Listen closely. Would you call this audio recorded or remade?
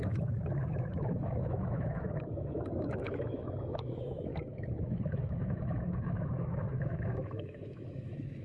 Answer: remade